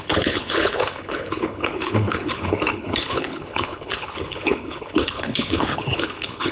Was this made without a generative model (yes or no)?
no